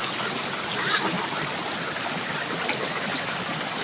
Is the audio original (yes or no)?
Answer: yes